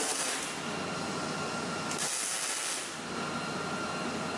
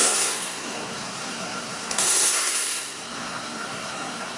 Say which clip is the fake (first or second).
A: second